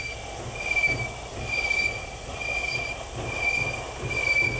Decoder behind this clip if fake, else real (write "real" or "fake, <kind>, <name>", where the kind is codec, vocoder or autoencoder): real